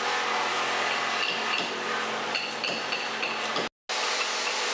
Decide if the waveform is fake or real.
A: real